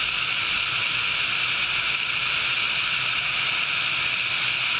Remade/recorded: recorded